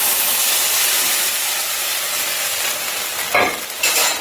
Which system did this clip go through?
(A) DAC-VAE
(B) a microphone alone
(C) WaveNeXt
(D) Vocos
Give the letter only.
B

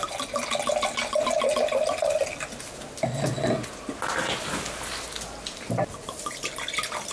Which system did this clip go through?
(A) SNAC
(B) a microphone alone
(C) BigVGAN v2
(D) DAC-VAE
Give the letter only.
B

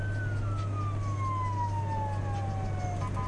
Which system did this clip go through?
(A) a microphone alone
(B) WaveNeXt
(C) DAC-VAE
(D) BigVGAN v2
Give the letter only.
A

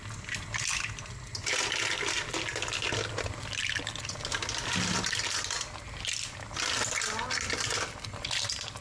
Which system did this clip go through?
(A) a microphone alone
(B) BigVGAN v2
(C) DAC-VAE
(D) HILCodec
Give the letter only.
A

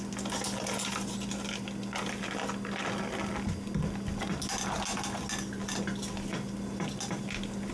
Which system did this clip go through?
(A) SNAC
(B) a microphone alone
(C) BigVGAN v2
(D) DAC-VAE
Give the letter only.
B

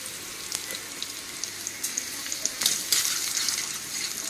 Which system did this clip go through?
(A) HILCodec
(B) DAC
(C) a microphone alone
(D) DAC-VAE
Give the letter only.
C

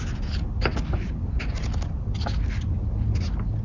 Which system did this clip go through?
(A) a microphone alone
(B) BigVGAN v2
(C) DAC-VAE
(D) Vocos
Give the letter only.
A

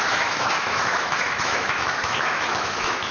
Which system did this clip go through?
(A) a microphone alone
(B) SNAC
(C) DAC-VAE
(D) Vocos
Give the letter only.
C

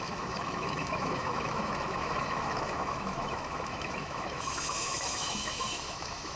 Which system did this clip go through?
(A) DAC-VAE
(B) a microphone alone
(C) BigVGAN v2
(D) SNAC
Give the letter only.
A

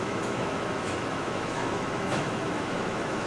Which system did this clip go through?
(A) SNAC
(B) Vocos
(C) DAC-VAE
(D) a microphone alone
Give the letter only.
C